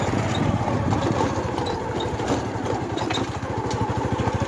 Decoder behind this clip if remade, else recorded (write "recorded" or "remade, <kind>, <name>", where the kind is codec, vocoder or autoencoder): recorded